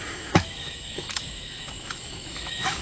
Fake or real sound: fake